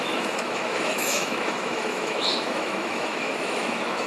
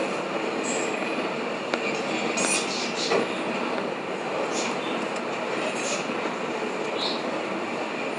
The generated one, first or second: first